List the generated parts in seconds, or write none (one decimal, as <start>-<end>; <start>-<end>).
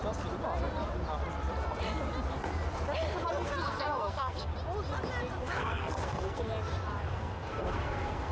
3.2-4.5; 5.4-6.5; 7.1-8.3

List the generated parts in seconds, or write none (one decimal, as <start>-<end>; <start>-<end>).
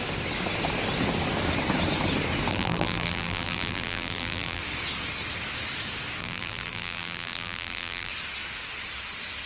2.5-4.6; 6.2-8.1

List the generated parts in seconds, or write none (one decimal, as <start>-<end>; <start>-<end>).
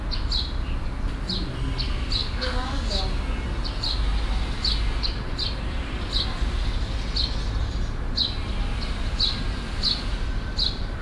2.2-3.0